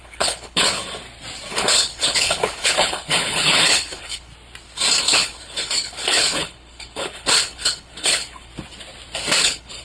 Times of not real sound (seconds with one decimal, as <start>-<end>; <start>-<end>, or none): 0.0-0.8; 1.5-4.3; 5.0-8.5; 9.4-9.8